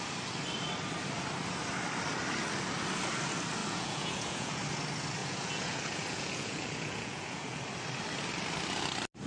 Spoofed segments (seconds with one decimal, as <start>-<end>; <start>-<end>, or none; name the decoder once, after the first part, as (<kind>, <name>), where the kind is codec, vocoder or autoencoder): 3.6-4.6 (vocoder, Vocos); 5.2-7.6